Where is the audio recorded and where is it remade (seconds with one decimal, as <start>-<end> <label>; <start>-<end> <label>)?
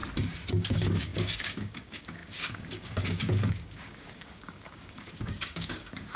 0.0-0.5 recorded; 0.5-6.2 remade